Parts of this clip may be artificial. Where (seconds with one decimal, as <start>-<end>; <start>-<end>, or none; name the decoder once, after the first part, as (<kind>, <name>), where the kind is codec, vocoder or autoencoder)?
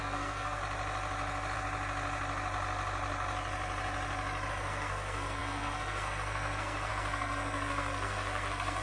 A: 0.0-0.6 (codec, SNAC); 4.5-8.8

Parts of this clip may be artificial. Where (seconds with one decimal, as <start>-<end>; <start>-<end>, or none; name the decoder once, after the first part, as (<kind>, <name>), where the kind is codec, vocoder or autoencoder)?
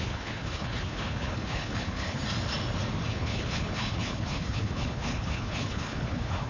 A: 0.0-2.2 (codec, HILCodec); 3.1-6.5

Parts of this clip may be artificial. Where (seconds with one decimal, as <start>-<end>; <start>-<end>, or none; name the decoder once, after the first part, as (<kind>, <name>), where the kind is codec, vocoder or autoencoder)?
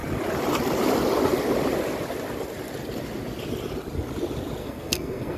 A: 4.6-5.4 (codec, SNAC)